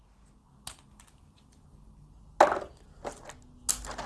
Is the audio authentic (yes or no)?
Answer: yes